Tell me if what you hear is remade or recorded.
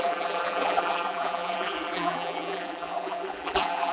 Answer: remade